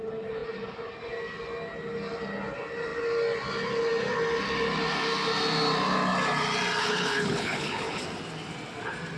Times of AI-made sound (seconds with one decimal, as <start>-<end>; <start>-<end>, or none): 6.8-8.0